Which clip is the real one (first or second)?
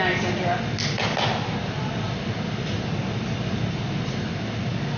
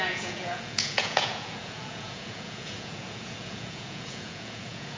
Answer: first